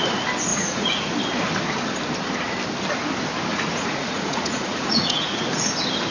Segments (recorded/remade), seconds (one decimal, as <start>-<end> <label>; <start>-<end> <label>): 0.0-0.5 recorded; 0.5-1.1 remade; 1.1-3.5 recorded; 3.5-5.5 remade; 5.5-6.1 recorded